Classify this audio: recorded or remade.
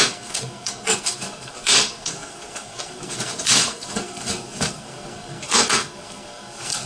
remade